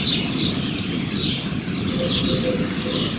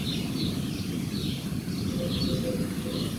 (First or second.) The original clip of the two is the first